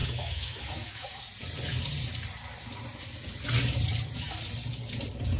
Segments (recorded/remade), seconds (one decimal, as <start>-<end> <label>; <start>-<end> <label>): 0.0-1.2 remade; 1.2-5.4 recorded